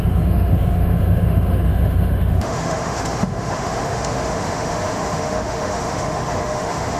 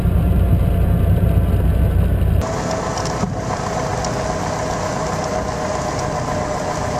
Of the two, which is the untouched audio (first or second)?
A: second